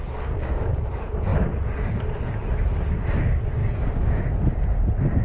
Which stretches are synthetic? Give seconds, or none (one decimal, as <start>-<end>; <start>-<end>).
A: 0.0-0.7; 3.6-4.2